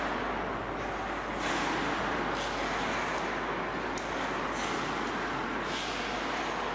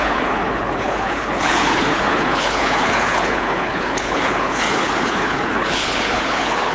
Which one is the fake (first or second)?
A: second